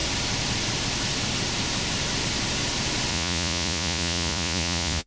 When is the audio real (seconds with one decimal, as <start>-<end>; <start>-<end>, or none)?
0.0-3.1